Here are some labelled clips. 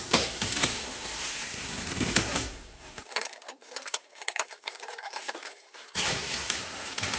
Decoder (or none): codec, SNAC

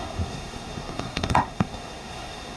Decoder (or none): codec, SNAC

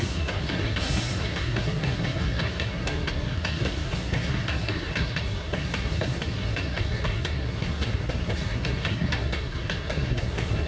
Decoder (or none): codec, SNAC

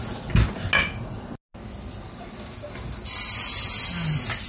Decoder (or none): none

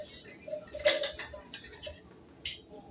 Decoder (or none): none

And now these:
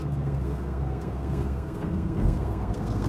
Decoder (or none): codec, SNAC